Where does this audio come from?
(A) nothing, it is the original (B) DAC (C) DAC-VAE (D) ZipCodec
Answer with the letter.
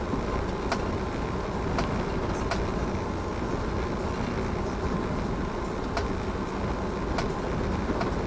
A